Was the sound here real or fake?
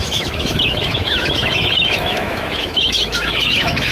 fake